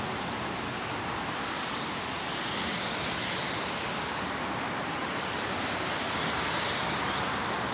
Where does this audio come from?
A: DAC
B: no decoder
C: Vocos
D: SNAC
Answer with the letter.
B